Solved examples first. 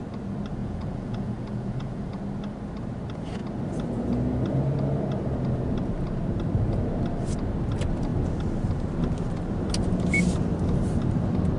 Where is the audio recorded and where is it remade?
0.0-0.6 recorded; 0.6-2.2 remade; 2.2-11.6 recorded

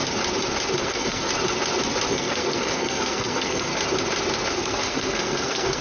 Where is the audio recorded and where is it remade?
0.0-0.8 recorded; 0.8-1.3 remade; 1.3-2.1 recorded; 2.1-3.7 remade; 3.7-4.5 recorded; 4.5-5.8 remade

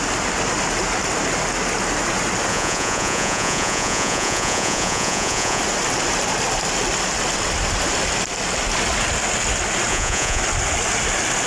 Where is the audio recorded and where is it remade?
0.0-2.5 recorded; 2.5-5.6 remade; 5.6-9.9 recorded; 9.9-10.4 remade; 10.4-11.5 recorded